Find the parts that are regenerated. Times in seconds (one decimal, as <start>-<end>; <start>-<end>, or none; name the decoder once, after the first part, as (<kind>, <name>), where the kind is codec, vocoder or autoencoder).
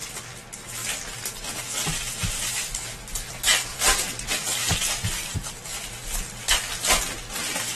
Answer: 3.7-4.2 (vocoder, BigVGAN v2)